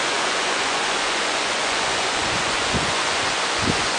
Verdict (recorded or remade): remade